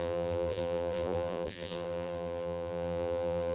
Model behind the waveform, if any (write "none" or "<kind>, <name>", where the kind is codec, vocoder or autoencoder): vocoder, BigVGAN v2